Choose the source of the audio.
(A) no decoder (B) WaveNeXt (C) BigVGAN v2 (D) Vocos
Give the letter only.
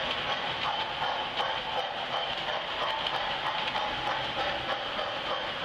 A